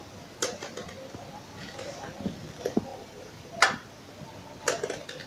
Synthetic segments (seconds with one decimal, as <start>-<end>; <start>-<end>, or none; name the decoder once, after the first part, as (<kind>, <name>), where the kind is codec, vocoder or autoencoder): 2.9-3.5 (vocoder, BigVGAN v2)